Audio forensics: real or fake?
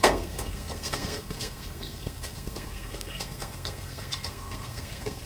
fake